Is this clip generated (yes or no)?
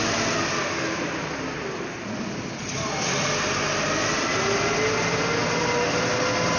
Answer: no